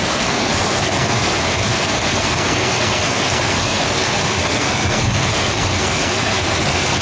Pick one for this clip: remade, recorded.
remade